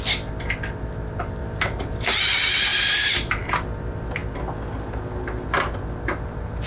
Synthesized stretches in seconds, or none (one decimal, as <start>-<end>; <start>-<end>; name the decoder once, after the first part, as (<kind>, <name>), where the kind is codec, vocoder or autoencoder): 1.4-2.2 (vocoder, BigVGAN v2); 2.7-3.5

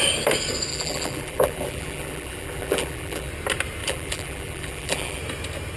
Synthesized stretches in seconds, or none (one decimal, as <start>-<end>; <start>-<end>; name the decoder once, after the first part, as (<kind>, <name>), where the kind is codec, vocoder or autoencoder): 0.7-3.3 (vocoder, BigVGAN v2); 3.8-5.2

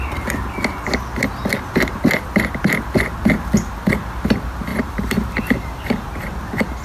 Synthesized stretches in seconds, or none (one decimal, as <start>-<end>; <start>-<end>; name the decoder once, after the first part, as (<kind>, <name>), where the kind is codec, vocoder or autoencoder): 4.7-6.1 (vocoder, BigVGAN v2)

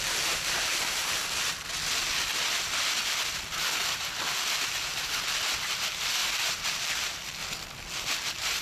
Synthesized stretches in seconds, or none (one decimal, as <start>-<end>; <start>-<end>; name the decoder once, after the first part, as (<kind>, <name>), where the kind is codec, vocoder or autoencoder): 0.0-1.2 (vocoder, BigVGAN v2); 3.7-7.4; 8.1-8.6

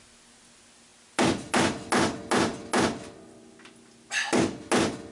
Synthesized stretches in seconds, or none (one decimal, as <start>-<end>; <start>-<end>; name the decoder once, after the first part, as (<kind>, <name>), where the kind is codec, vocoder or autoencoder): none

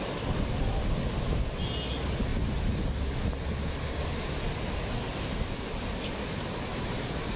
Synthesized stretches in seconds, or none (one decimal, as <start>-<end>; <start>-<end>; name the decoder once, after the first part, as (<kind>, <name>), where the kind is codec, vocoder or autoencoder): none